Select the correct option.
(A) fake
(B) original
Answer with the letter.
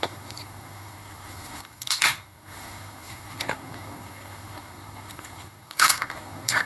A